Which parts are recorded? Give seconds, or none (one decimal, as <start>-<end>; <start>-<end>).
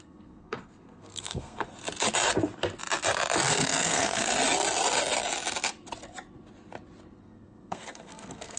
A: 1.6-3.5; 4.3-7.2